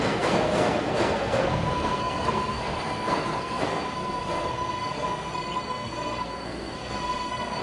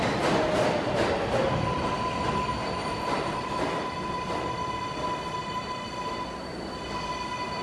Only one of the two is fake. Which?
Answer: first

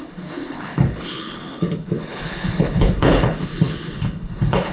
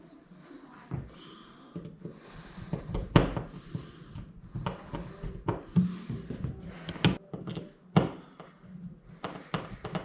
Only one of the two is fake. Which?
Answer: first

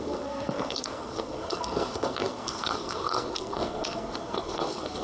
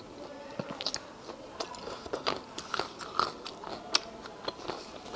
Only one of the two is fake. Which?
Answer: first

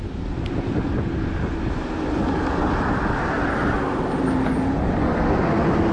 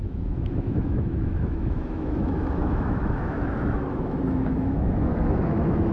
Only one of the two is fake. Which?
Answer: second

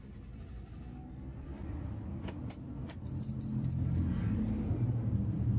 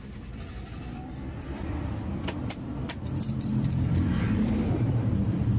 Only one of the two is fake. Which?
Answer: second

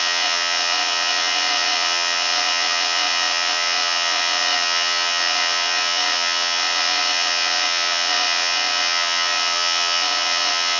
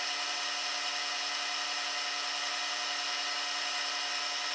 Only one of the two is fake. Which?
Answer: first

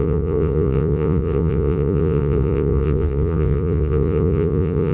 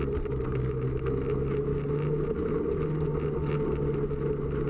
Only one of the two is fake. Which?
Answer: first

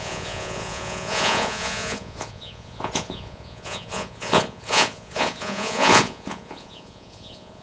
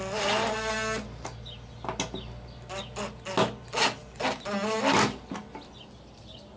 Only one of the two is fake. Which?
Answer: first